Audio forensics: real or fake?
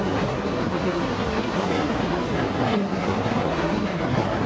fake